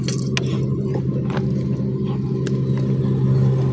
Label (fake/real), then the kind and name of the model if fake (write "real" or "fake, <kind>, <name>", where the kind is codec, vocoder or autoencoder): real